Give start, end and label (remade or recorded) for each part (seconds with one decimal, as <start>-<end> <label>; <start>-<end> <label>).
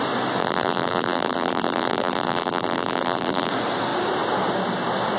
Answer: 0.0-0.4 recorded; 0.4-3.5 remade; 3.5-5.2 recorded